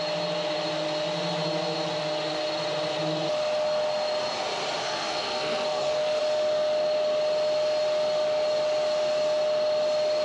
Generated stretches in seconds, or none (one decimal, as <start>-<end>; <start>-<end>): 4.8-6.2

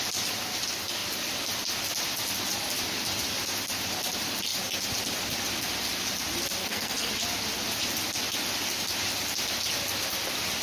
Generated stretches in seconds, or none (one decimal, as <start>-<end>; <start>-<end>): 6.6-7.1

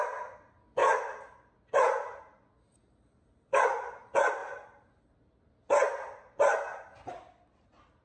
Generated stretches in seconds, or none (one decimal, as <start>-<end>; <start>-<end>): none

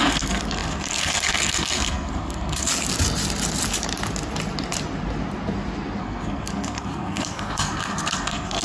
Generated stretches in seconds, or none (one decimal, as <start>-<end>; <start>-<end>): 0.0-2.7; 6.0-8.6

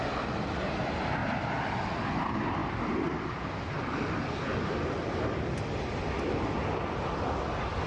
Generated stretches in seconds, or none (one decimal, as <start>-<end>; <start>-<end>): none

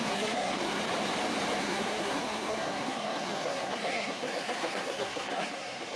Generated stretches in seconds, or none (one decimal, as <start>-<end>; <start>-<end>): 0.0-0.8; 1.6-6.0

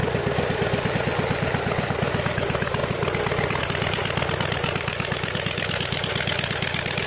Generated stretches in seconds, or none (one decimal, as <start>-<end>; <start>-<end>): none